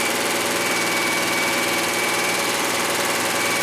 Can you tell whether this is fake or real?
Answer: fake